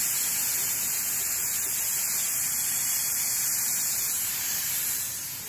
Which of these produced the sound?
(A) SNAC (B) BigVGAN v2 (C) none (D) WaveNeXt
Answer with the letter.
B